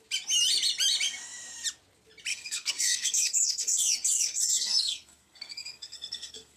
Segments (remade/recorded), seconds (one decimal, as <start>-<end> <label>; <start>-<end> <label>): 0.0-2.3 recorded; 2.3-6.6 remade